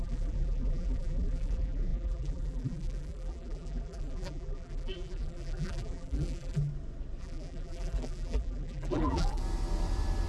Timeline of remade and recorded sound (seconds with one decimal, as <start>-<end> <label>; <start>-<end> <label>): 0.0-6.7 remade; 6.7-7.2 recorded; 7.2-9.4 remade; 9.4-10.3 recorded